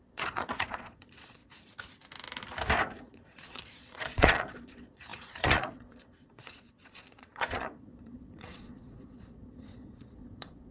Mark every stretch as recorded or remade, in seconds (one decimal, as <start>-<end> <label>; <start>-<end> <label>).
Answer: 0.0-1.4 remade; 1.4-3.0 recorded; 3.0-10.7 remade